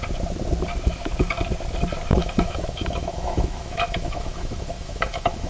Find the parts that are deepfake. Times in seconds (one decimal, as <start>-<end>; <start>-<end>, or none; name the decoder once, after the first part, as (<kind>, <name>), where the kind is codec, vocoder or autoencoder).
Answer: 2.1-5.5 (autoencoder, DAC-VAE)